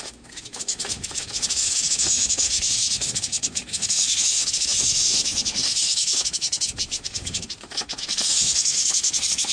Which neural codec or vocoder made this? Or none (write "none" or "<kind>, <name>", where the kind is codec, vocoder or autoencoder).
autoencoder, DAC-VAE